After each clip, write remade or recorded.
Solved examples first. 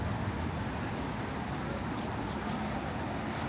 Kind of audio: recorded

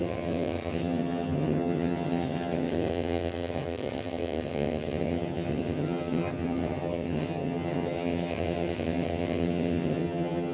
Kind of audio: remade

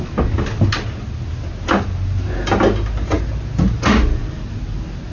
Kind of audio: recorded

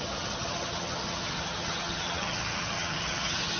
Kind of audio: remade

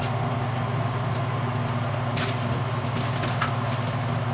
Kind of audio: recorded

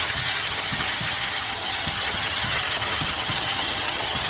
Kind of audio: remade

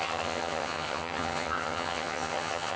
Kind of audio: remade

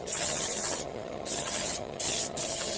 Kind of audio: remade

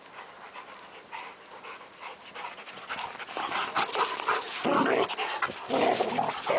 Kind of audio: recorded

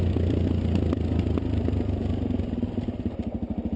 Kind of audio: recorded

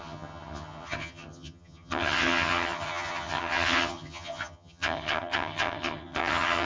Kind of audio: remade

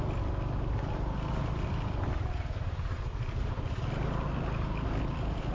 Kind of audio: recorded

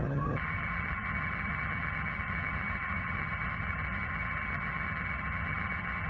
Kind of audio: remade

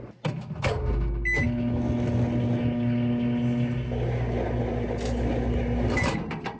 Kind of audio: recorded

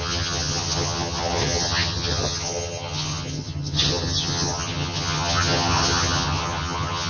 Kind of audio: remade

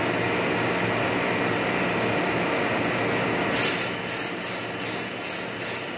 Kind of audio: recorded